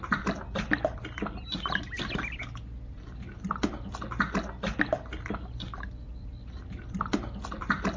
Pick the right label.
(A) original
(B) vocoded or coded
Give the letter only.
A